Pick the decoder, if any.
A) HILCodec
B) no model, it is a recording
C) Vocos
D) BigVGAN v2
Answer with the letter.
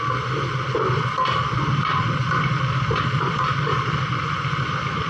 B